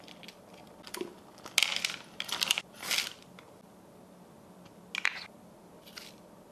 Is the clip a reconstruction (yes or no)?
no